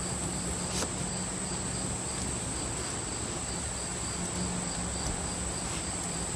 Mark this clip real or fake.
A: real